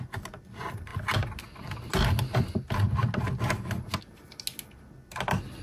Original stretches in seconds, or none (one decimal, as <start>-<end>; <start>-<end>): 0.0-5.6